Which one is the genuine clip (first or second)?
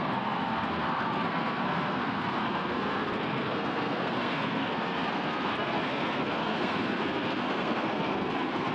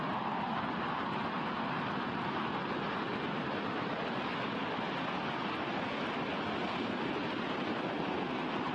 second